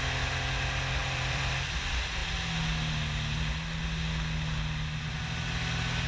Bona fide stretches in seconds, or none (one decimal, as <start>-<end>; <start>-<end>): 0.0-1.0; 1.8-6.1